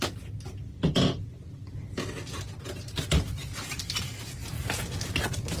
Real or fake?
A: real